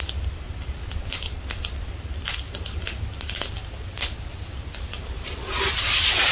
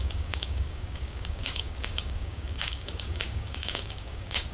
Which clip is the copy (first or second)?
second